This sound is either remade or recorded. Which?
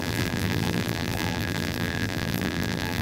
remade